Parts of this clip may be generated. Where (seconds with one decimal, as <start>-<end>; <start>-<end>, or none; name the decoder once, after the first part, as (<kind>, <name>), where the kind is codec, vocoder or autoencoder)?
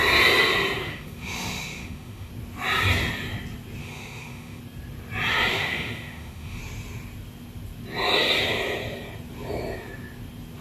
0.8-2.3 (autoencoder, DAC-VAE); 3.8-4.6; 5.5-6.6